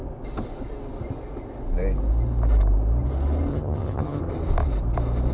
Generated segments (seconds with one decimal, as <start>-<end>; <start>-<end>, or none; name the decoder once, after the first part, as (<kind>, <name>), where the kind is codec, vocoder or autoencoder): 3.5-4.2 (vocoder, HiFi-GAN)